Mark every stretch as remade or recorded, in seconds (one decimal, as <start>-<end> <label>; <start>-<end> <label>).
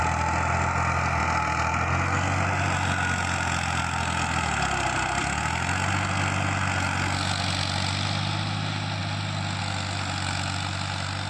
0.0-11.3 recorded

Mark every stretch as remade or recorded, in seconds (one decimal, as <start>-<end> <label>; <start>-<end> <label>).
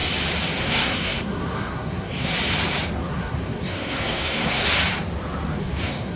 0.0-0.6 recorded; 0.6-2.3 remade; 2.3-3.1 recorded; 3.1-4.6 remade; 4.6-5.6 recorded; 5.6-6.2 remade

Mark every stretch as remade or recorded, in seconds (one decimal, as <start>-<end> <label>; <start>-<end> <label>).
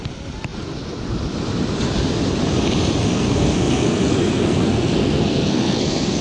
0.0-3.0 recorded; 3.0-6.2 remade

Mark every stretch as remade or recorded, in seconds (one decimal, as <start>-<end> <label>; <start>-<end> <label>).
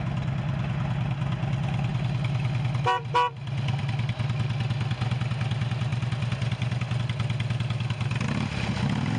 0.0-9.2 recorded